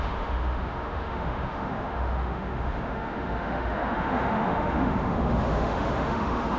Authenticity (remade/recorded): remade